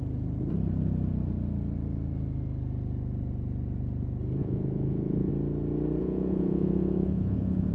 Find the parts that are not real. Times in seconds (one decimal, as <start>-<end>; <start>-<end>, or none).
4.4-5.3; 6.0-7.7